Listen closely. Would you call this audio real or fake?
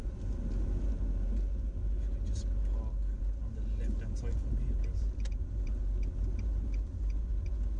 real